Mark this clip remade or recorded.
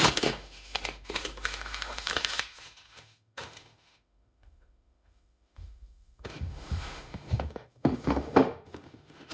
remade